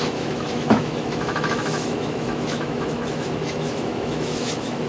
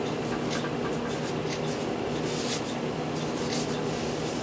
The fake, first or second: first